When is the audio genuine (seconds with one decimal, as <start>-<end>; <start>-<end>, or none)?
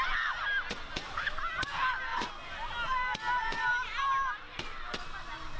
0.0-5.6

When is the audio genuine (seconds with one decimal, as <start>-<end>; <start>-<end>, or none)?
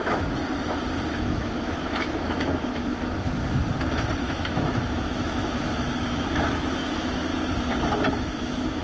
0.4-1.1; 3.4-4.2; 7.3-8.1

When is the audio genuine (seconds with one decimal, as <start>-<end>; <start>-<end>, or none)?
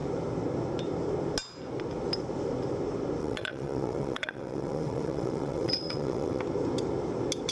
0.0-3.2; 6.4-7.5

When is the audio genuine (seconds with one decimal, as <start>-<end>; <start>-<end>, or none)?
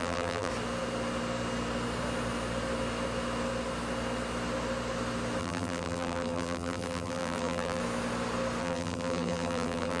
0.5-5.4; 7.8-8.6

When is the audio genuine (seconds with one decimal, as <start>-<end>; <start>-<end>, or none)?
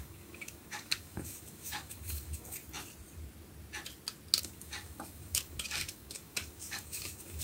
2.6-4.4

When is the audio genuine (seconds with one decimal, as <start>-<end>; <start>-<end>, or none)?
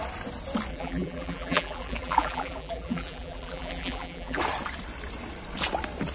0.0-0.7; 4.4-6.1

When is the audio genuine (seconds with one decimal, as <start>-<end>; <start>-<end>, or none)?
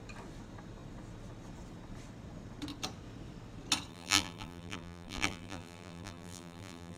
0.0-3.9